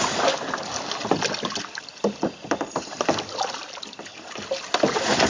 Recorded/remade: recorded